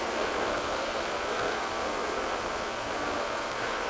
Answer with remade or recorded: remade